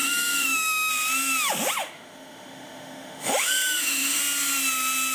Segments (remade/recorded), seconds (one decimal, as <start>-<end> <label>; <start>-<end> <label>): 0.0-0.9 remade; 0.9-1.8 recorded; 1.8-4.2 remade; 4.2-5.1 recorded